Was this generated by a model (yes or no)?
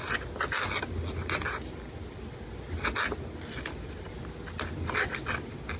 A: no